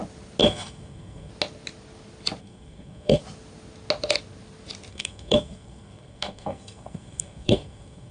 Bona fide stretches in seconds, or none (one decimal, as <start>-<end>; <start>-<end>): 0.0-0.4; 1.3-2.4; 3.2-4.9